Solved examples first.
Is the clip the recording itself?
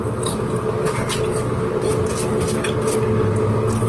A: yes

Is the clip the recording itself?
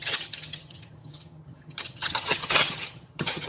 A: no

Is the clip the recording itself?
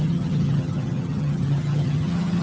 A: no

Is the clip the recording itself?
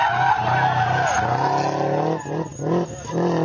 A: yes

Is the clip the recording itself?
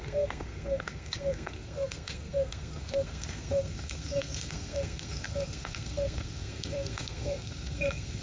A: no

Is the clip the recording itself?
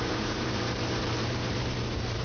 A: no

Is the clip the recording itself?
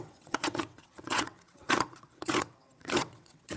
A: no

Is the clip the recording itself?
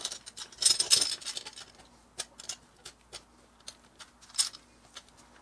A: yes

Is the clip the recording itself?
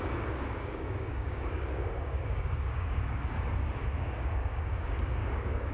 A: no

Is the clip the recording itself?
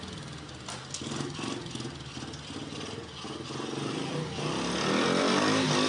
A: yes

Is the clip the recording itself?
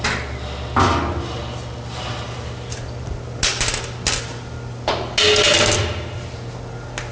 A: yes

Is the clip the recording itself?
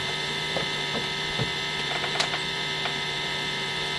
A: no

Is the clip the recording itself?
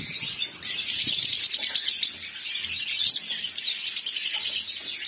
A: yes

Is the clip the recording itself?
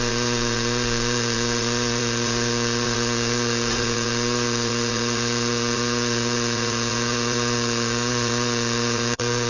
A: no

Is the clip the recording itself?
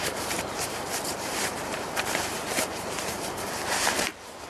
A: no